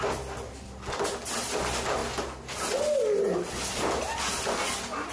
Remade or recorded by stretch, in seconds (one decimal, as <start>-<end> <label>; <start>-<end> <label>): 0.0-5.1 recorded